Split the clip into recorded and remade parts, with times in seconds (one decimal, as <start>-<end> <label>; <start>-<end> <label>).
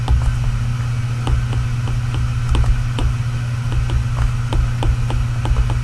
0.0-5.8 recorded